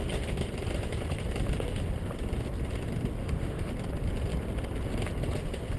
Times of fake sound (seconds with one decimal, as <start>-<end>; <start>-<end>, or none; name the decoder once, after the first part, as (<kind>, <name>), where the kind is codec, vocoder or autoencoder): 3.2-3.7 (autoencoder, DAC-VAE)